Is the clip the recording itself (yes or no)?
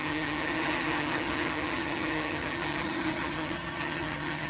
no